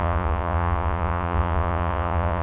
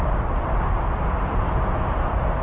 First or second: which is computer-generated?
first